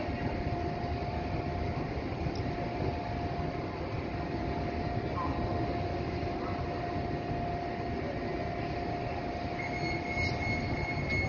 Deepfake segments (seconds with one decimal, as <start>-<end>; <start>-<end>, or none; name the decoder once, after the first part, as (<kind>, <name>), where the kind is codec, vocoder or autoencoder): none